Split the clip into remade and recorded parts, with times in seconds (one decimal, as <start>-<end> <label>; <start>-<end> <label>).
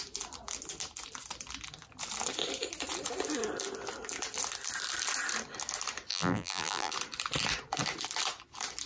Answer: 0.0-6.1 recorded; 6.1-6.9 remade; 6.9-8.9 recorded